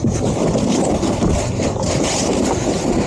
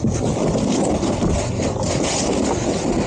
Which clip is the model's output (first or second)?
first